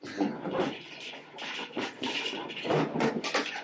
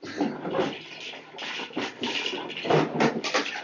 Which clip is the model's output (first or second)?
first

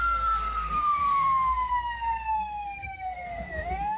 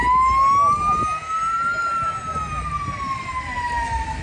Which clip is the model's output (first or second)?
first